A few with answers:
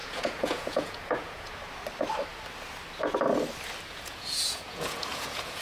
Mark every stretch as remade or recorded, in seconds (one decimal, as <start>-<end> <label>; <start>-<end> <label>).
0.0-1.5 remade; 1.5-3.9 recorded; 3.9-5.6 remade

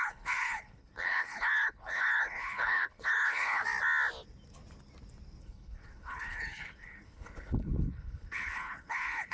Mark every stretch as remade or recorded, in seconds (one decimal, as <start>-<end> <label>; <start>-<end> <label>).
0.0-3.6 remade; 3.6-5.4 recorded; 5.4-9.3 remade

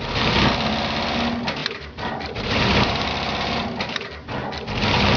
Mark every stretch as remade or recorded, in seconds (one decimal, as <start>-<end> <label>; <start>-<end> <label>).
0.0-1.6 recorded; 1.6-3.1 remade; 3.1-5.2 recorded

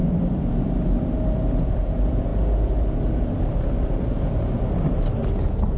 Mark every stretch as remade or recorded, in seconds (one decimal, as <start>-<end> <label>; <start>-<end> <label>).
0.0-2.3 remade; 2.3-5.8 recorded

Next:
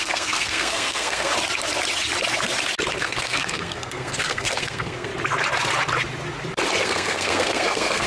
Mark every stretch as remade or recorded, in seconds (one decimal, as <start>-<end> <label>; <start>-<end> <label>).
0.0-1.3 remade; 1.3-3.0 recorded; 3.0-5.1 remade; 5.1-6.8 recorded; 6.8-8.1 remade

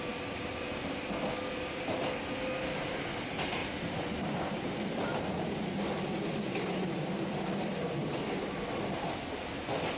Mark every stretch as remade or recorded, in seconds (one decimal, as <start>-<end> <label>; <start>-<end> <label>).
0.0-3.6 recorded; 3.6-8.7 remade; 8.7-10.0 recorded